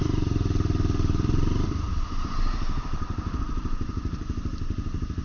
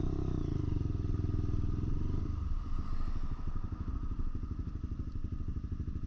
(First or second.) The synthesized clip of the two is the first